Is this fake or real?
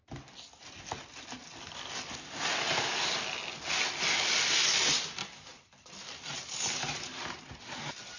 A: real